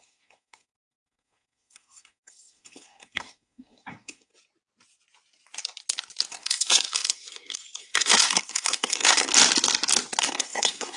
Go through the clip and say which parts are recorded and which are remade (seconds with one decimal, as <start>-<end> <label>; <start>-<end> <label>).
0.0-4.3 remade; 4.3-6.3 recorded; 6.3-9.3 remade; 9.3-10.2 recorded; 10.2-11.0 remade